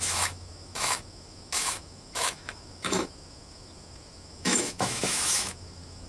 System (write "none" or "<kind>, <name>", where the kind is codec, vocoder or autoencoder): autoencoder, DAC-VAE